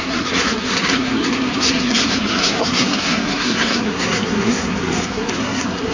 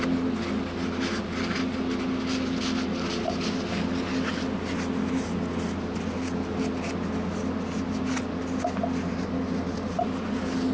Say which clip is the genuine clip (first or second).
second